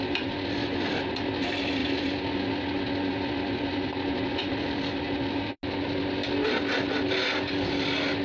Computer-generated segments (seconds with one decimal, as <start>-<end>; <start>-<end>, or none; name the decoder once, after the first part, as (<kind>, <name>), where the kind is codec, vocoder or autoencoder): none